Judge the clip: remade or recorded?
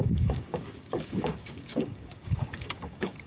remade